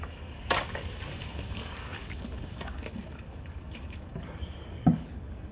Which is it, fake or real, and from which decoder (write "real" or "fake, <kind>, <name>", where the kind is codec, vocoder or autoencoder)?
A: fake, codec, DAC